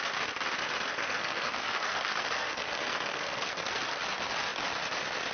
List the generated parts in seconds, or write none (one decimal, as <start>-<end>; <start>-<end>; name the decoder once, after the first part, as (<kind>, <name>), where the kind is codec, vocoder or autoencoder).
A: 0.9-4.0 (codec, SNAC)